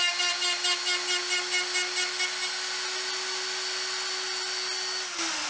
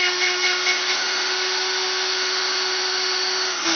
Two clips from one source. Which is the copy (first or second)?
second